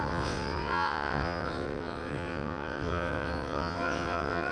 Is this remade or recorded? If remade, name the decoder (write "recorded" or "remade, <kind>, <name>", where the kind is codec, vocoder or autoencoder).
remade, vocoder, WaveNeXt